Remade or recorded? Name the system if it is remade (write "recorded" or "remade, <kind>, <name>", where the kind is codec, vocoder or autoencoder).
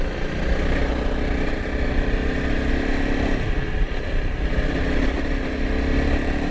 recorded